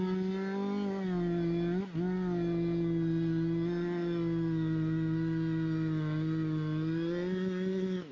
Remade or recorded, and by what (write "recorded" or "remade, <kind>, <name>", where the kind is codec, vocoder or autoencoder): recorded